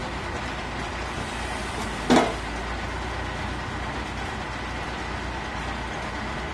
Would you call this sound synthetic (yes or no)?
no